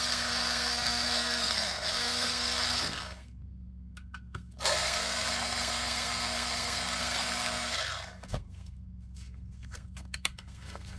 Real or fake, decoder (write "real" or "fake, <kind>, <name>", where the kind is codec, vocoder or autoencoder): fake, codec, SNAC